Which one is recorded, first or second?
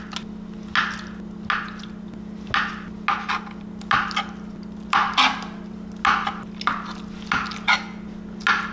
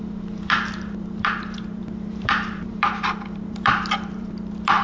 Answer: first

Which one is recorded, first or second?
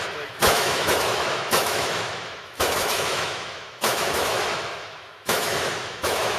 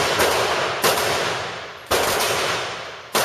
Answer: second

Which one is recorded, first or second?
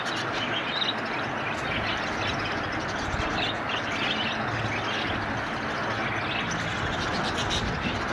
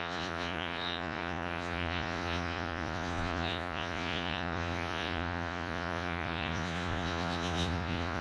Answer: first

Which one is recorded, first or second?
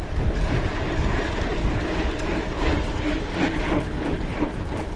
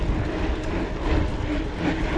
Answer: second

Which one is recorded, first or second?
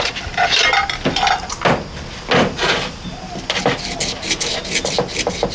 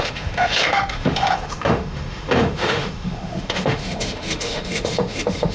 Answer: first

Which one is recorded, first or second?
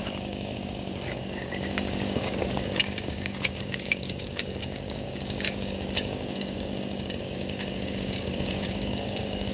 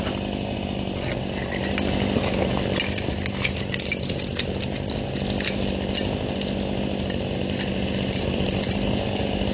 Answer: second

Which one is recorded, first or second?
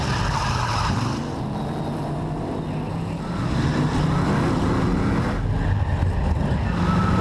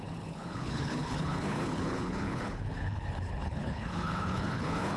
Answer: first